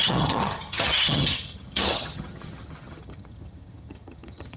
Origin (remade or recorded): remade